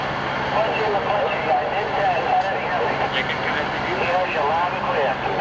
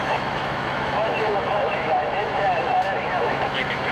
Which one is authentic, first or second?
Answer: first